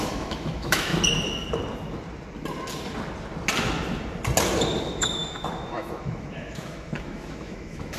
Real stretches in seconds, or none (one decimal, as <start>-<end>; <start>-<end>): 0.9-4.8

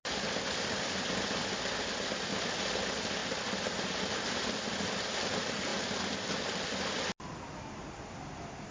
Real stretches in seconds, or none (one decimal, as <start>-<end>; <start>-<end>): 0.0-3.2; 4.4-8.7